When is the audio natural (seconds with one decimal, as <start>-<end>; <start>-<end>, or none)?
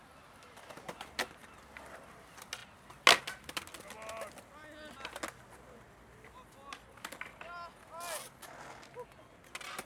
0.0-9.9